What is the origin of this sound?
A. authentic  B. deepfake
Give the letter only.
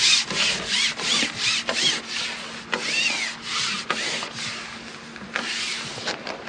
A